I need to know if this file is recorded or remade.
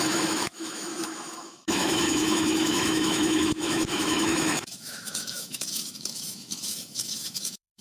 remade